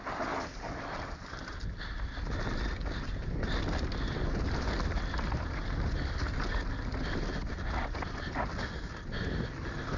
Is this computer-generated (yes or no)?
no